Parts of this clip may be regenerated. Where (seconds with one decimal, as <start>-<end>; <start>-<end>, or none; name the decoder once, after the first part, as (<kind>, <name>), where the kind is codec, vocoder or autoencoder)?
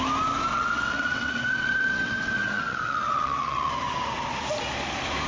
0.5-3.7 (vocoder, WaveNeXt)